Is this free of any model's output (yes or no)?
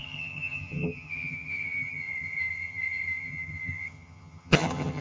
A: no